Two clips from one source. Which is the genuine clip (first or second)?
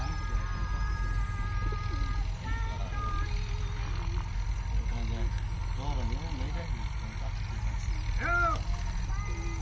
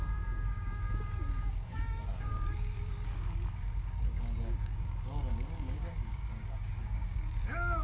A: first